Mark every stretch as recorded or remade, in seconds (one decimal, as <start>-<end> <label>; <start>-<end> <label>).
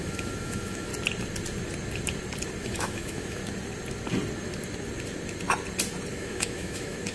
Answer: 0.0-0.9 remade; 0.9-2.6 recorded; 2.6-3.4 remade; 3.4-6.1 recorded; 6.1-7.1 remade